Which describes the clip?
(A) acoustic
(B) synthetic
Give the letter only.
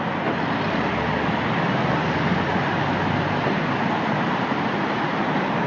A